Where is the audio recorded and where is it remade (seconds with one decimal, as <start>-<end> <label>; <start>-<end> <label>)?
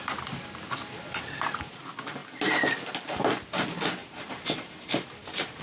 0.0-4.0 recorded; 4.0-5.6 remade